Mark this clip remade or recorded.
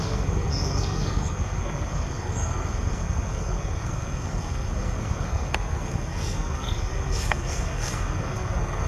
remade